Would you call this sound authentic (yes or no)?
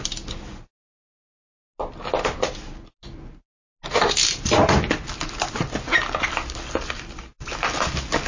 yes